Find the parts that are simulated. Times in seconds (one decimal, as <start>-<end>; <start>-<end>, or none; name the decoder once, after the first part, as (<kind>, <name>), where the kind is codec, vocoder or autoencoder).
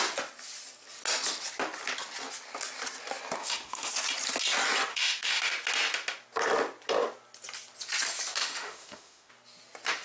3.4-3.9 (autoencoder, DAC-VAE); 4.9-5.5; 8.4-9.3